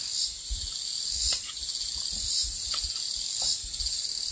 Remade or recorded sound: recorded